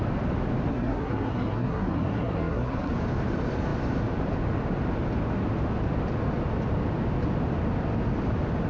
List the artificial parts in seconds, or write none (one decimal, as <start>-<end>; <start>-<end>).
0.7-2.9